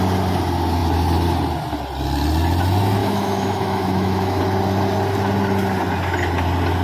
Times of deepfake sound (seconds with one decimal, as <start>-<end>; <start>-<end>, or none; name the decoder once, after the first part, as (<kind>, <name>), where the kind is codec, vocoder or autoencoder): 3.0-4.4 (autoencoder, DAC-VAE)